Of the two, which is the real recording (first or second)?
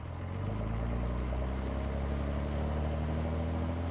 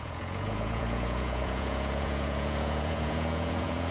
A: first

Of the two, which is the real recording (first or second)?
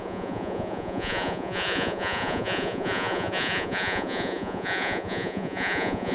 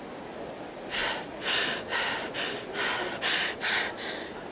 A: second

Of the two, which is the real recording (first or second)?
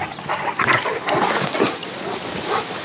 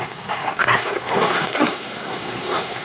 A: first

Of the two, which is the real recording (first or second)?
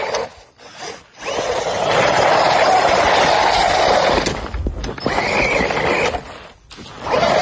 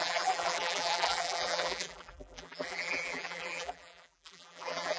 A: first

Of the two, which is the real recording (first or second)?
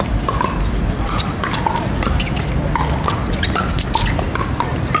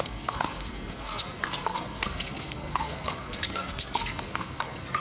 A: first